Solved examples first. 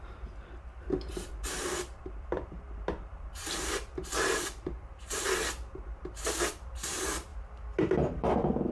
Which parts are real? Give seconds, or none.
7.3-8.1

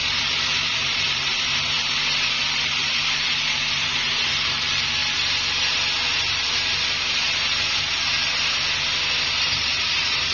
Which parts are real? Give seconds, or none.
5.0-9.3

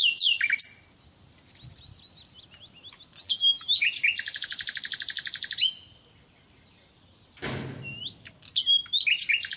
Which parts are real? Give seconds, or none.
0.0-3.2; 3.9-9.6

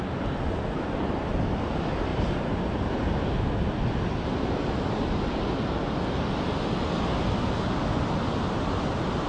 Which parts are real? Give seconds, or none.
0.0-2.1; 3.1-9.3

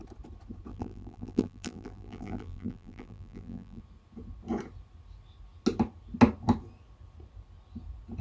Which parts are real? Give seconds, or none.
0.0-0.7; 3.8-8.2

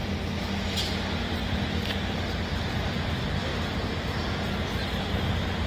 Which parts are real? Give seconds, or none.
0.0-5.7